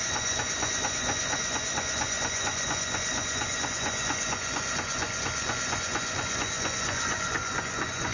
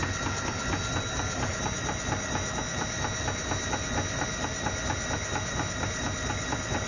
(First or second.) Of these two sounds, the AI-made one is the first